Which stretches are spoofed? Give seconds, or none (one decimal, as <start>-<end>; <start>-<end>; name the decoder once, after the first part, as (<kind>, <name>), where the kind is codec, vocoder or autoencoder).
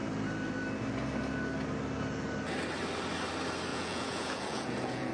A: 3.7-5.1 (vocoder, Vocos)